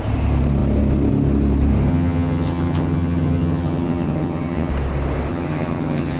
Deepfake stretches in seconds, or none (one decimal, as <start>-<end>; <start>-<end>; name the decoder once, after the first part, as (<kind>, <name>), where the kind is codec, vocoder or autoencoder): 1.9-4.7 (vocoder, HiFi-GAN); 5.3-6.2